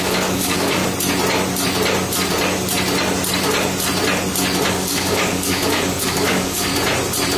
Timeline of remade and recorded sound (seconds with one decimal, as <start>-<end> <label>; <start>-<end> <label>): 0.0-0.8 remade; 0.8-4.7 recorded; 4.7-6.7 remade; 6.7-7.4 recorded